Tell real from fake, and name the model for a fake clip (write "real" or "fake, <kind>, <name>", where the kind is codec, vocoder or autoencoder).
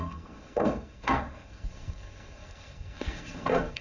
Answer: fake, codec, SNAC